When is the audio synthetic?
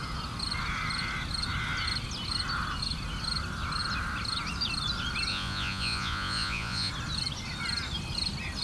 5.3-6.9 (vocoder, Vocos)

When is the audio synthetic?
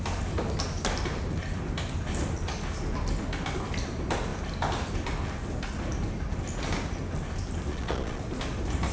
7.7-8.2 (vocoder, Vocos)